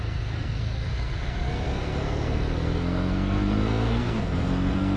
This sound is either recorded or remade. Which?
remade